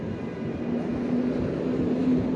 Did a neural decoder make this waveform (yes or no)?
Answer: no